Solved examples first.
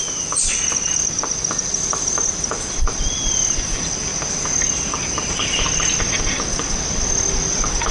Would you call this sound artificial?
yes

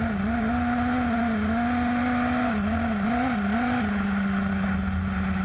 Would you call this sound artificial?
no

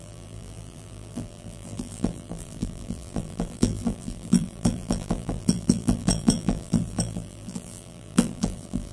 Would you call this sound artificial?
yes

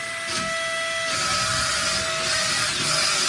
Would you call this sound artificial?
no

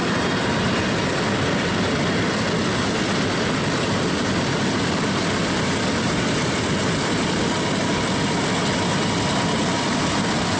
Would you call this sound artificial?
no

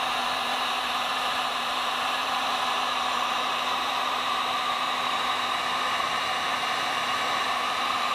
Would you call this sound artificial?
yes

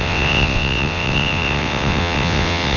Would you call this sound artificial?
yes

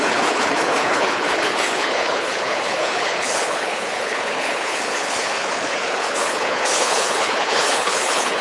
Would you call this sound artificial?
yes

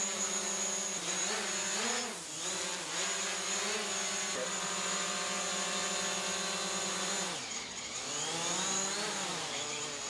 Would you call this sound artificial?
no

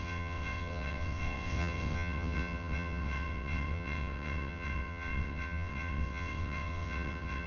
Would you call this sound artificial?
yes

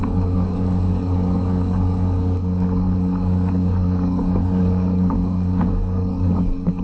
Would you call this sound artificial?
yes